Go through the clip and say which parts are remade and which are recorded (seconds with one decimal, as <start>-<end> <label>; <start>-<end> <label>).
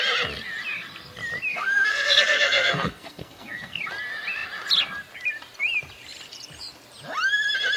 0.0-1.5 recorded; 1.5-3.8 remade; 3.8-7.8 recorded